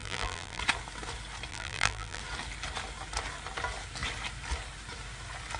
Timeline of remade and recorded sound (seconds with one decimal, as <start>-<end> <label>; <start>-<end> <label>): 0.0-0.6 remade; 0.6-1.5 recorded; 1.5-2.2 remade; 2.2-5.6 recorded